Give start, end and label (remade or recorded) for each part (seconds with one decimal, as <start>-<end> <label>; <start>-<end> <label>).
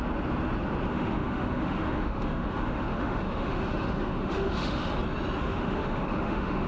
0.0-0.9 recorded; 0.9-4.9 remade; 4.9-5.4 recorded; 5.4-6.7 remade